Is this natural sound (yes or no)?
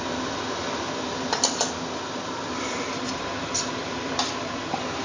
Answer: yes